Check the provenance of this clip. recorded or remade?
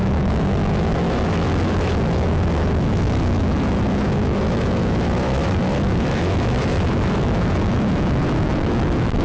remade